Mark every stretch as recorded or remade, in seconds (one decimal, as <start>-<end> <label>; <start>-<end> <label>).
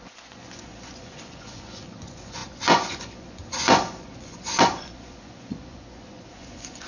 0.0-6.9 remade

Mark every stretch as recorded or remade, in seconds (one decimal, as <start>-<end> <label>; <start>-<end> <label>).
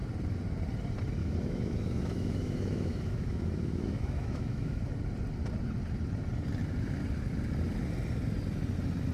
0.0-1.2 recorded; 1.2-4.8 remade; 4.8-9.1 recorded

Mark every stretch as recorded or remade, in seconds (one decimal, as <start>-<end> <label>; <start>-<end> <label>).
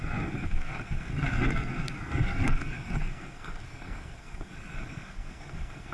0.0-5.9 remade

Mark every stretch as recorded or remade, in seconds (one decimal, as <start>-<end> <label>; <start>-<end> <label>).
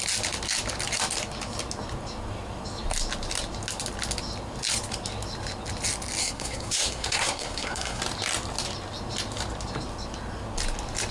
0.0-6.2 recorded; 6.2-8.0 remade; 8.0-11.1 recorded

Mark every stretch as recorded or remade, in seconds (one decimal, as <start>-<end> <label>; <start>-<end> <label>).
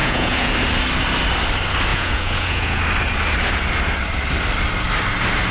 0.0-0.5 remade; 0.5-1.9 recorded; 1.9-2.8 remade; 2.8-5.5 recorded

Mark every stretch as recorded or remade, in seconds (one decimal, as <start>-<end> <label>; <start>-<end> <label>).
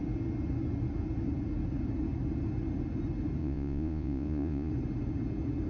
0.0-3.4 recorded; 3.4-4.7 remade; 4.7-5.7 recorded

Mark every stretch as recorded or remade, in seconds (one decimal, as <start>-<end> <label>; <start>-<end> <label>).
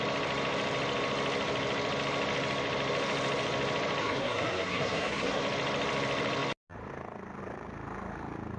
0.0-4.0 recorded; 4.0-5.4 remade; 5.4-8.6 recorded